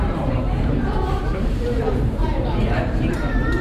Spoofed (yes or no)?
yes